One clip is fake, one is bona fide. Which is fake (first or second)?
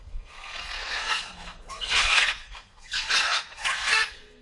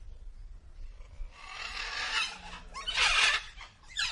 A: first